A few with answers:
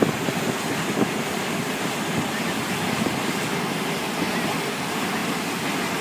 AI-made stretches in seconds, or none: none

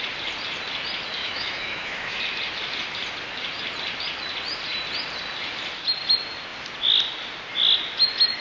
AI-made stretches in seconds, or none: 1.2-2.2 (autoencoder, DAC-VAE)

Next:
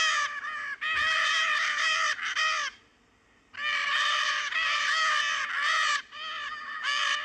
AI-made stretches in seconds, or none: 3.8-5.0 (vocoder, BigVGAN v2)

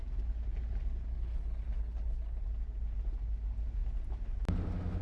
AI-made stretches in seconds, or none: 1.1-2.4 (codec, HILCodec)

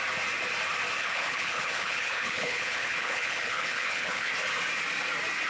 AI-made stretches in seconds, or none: 1.0-4.3 (codec, HILCodec)